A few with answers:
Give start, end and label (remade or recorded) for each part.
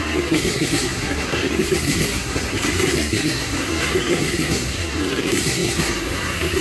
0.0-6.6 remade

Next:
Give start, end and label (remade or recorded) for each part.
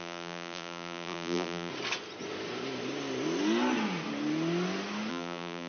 0.0-1.7 remade; 1.7-5.1 recorded; 5.1-5.7 remade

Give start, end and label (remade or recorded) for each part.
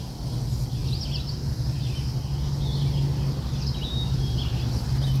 0.0-5.2 recorded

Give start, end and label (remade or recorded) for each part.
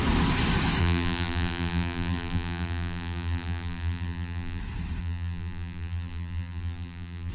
0.0-0.8 recorded; 0.8-4.6 remade; 4.6-5.0 recorded; 5.0-7.3 remade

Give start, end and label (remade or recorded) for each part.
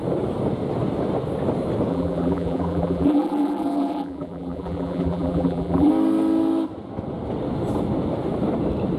0.0-1.9 recorded; 1.9-5.9 remade; 5.9-9.0 recorded